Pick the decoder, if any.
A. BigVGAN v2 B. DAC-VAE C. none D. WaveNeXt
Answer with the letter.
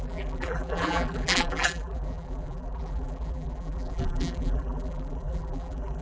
A